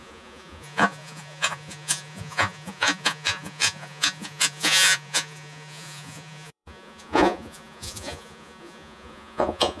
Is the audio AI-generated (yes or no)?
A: yes